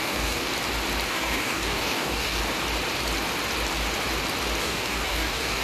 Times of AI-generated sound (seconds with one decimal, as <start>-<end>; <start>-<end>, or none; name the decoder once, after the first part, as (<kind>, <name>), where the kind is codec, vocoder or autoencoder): 0.0-0.5 (codec, DAC); 1.1-2.4; 4.6-5.6